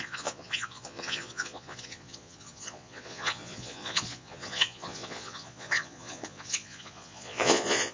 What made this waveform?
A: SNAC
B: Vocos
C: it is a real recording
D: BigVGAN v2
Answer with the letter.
B